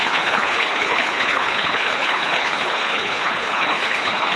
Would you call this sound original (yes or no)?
no